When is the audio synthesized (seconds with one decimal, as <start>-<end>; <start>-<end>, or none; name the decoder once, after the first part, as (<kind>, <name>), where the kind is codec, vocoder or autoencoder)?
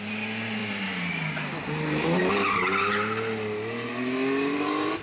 none